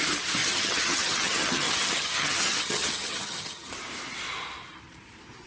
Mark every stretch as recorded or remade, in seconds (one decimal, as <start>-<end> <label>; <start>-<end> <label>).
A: 0.0-0.4 recorded; 0.4-3.7 remade; 3.7-5.5 recorded

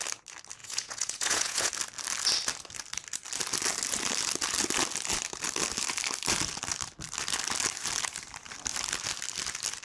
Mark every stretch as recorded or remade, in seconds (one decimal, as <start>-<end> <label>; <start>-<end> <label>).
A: 0.0-0.6 recorded; 0.6-1.7 remade; 1.7-9.8 recorded

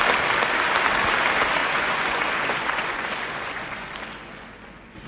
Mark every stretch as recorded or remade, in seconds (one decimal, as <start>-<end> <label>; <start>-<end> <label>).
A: 0.0-1.6 recorded; 1.6-5.1 remade

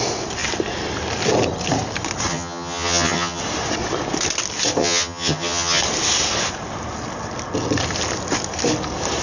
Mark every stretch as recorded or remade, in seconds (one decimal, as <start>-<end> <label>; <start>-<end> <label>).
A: 0.0-2.3 recorded; 2.3-3.4 remade; 3.4-4.8 recorded; 4.8-5.8 remade; 5.8-9.2 recorded